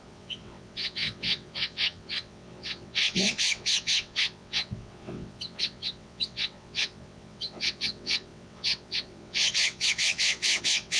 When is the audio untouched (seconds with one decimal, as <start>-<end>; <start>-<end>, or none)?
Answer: none